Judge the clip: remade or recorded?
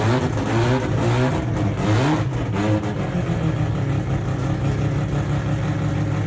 recorded